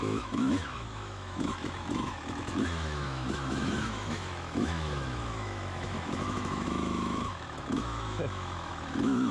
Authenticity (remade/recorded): remade